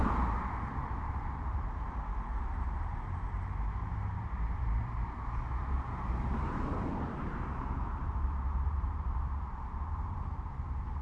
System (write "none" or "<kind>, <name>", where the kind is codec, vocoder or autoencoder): vocoder, BigVGAN v2